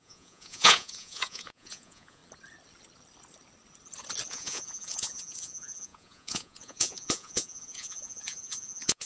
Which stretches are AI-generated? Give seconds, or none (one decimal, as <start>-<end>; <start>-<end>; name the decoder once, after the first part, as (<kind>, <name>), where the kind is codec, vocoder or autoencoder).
0.0-2.2 (vocoder, Vocos); 4.3-9.1